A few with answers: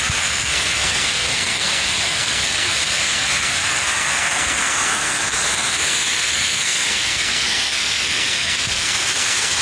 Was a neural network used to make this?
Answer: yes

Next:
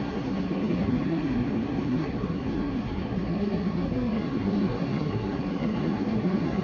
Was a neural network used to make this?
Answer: yes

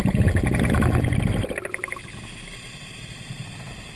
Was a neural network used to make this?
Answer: no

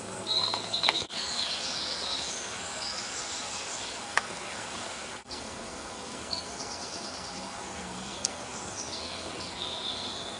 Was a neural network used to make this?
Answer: yes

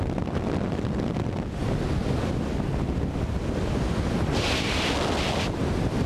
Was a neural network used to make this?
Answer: no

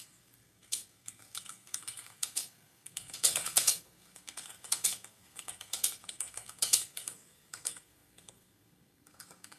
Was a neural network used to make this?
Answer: yes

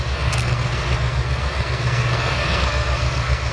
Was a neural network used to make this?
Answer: yes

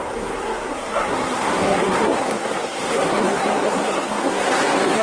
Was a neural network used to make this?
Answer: yes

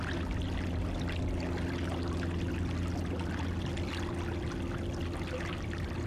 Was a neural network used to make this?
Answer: no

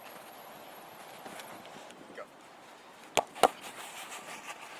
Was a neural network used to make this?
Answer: no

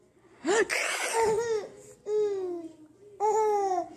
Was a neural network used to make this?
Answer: no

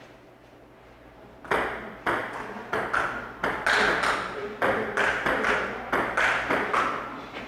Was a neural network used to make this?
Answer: no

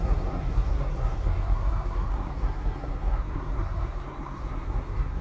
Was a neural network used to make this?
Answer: yes